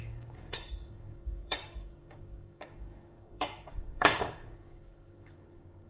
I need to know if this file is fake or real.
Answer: fake